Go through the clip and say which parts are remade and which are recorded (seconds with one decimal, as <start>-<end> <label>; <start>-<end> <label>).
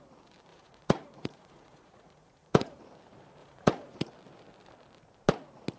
0.0-0.5 recorded; 0.5-2.8 remade; 2.8-3.4 recorded; 3.4-4.1 remade; 4.1-5.8 recorded